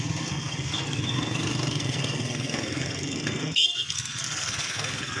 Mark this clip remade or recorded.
remade